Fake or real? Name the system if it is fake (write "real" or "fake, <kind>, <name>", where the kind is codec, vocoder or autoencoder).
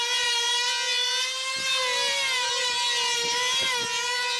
real